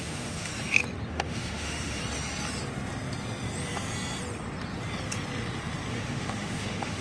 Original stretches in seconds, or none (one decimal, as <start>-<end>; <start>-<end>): 0.5-1.1; 2.0-5.9